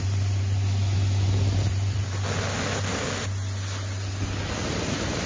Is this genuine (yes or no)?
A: yes